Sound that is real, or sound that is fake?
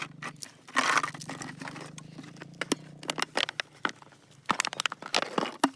real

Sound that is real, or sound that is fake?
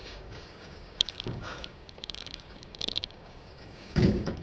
fake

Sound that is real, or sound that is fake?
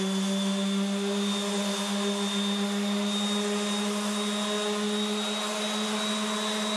real